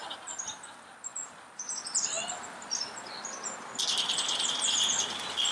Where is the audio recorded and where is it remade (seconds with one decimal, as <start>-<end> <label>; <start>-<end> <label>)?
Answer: 0.0-5.5 recorded

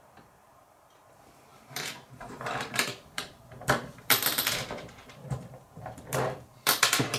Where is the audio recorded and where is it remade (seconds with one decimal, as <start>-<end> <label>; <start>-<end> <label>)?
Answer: 0.0-7.2 remade

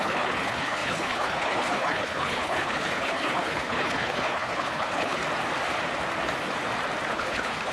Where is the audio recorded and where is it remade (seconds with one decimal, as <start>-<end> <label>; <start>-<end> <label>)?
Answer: 0.0-5.2 remade; 5.2-7.1 recorded; 7.1-7.7 remade